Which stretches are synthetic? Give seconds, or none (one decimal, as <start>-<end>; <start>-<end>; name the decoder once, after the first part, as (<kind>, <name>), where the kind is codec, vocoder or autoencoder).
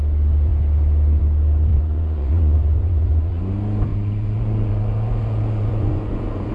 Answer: 1.7-3.4 (vocoder, Vocos); 3.9-6.5